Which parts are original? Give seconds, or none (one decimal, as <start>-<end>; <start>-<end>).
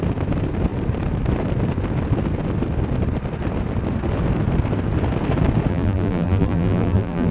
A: 0.0-5.7